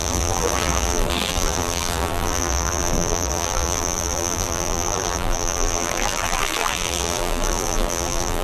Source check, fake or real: fake